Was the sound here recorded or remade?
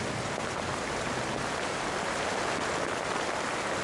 recorded